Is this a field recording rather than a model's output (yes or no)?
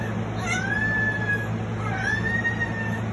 yes